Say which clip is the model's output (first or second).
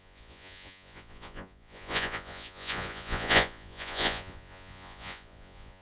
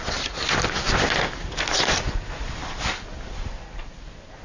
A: first